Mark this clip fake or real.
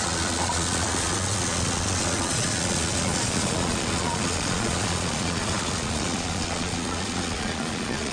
fake